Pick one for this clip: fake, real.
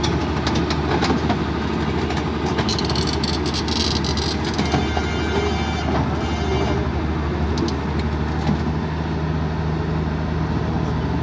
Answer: real